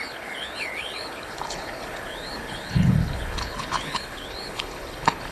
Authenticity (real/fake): fake